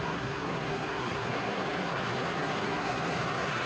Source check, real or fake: fake